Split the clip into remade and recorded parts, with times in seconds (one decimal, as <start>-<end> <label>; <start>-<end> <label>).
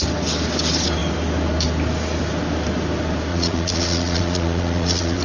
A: 0.0-3.3 recorded; 3.3-5.2 remade